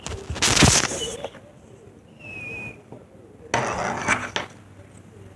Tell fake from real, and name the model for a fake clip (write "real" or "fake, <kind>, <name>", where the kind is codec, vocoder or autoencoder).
real